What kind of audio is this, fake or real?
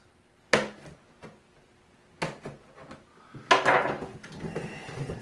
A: real